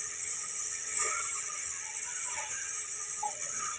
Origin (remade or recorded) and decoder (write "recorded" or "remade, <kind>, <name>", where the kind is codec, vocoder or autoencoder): remade, vocoder, HiFi-GAN